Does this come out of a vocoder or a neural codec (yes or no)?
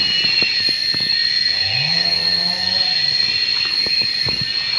no